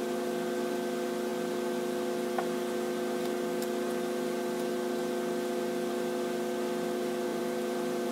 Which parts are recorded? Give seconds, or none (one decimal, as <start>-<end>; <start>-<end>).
0.0-7.3